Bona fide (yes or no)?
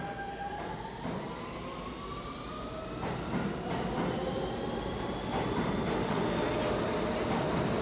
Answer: yes